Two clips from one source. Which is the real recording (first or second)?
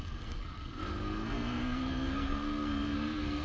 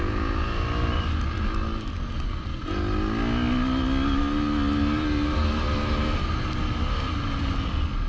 second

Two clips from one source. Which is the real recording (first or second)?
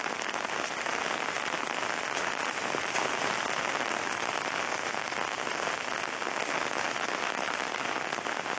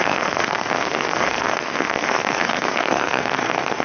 first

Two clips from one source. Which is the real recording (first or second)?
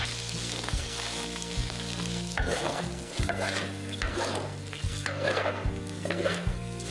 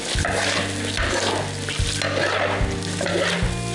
second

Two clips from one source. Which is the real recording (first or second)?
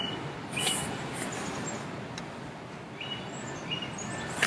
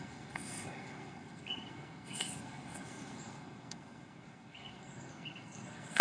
first